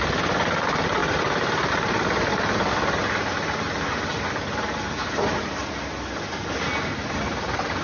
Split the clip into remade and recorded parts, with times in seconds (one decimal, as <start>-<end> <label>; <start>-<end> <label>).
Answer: 0.0-7.8 recorded